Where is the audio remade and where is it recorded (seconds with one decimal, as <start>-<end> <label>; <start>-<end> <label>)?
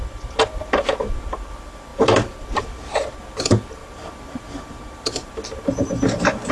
0.0-6.5 remade